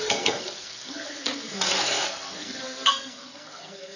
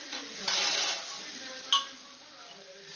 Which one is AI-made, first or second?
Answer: first